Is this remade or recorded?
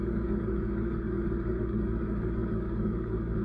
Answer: remade